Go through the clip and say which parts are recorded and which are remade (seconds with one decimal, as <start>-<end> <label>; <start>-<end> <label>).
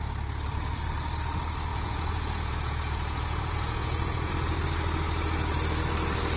0.0-1.7 recorded; 1.7-4.3 remade; 4.3-6.4 recorded